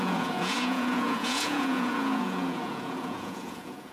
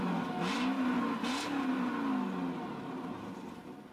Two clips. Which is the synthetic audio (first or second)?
first